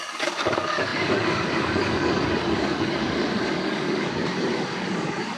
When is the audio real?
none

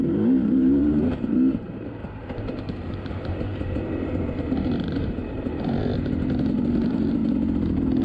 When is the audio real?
7.2-8.0

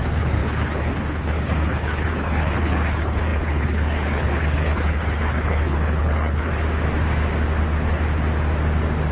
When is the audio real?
6.5-9.1

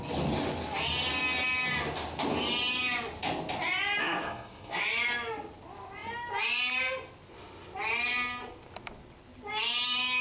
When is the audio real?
0.0-4.0; 4.8-10.2

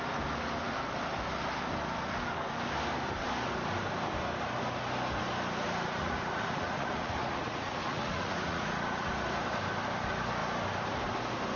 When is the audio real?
0.0-6.0; 9.1-11.6

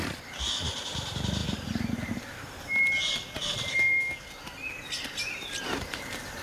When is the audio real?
0.0-3.7; 4.3-6.4

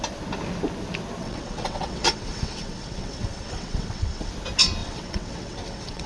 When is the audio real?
0.0-1.2; 4.3-4.8